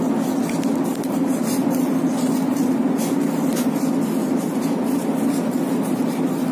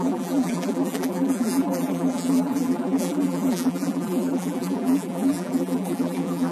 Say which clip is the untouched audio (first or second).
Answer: first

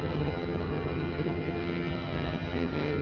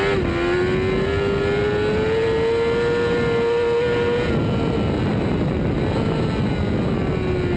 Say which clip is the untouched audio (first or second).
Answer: second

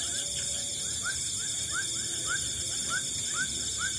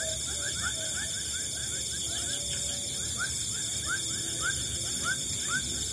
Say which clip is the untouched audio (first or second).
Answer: second